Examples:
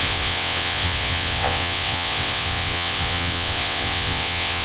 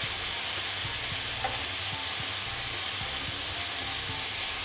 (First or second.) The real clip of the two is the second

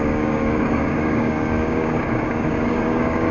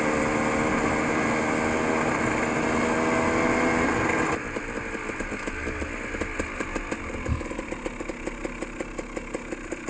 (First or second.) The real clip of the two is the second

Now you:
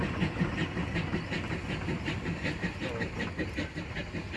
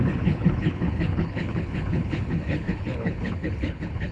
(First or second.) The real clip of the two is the first